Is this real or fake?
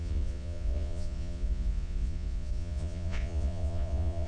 fake